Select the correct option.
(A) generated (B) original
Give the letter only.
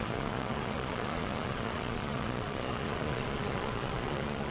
A